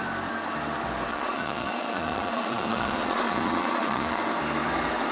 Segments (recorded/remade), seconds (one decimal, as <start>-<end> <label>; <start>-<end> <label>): 0.0-1.1 recorded; 1.1-4.2 remade; 4.2-5.1 recorded